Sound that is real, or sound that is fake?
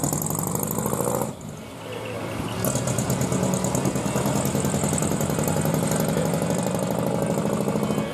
real